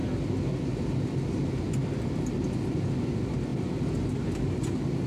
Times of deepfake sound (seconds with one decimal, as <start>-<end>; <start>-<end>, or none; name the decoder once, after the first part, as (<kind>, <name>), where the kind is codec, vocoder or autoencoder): none